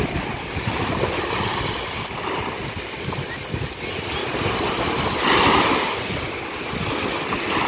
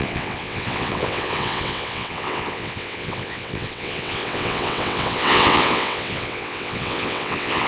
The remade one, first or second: second